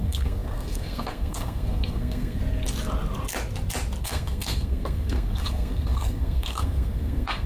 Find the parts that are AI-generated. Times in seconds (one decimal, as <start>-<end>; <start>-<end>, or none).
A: 0.0-2.4; 4.0-7.5